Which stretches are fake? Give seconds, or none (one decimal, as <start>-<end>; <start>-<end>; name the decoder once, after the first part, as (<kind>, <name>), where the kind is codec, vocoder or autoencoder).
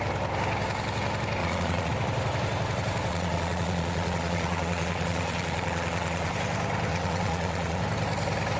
1.4-1.9 (vocoder, Vocos); 3.1-6.3; 6.9-7.8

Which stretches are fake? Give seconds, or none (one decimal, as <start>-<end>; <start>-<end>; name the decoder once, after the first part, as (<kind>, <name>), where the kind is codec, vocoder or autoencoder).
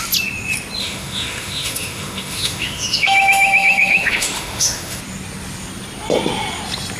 0.8-5.0 (autoencoder, DAC-VAE)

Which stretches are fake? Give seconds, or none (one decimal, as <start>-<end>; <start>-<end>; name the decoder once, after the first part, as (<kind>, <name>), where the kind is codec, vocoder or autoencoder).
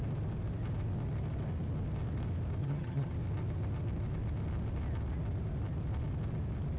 2.6-3.1 (vocoder, HiFi-GAN)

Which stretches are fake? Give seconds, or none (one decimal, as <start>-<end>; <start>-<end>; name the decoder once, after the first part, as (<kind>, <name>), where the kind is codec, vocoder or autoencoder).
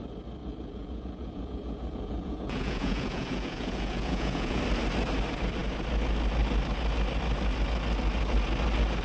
0.4-4.6 (vocoder, Vocos)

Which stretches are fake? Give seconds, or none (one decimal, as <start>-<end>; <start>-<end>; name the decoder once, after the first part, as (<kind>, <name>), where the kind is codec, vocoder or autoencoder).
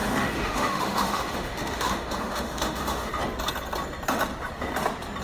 0.0-3.1 (autoencoder, DAC-VAE)